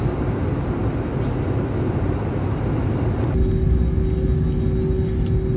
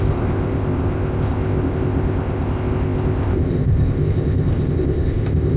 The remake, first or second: second